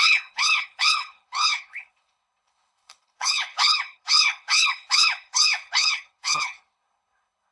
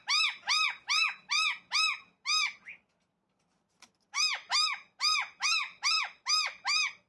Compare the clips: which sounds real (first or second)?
second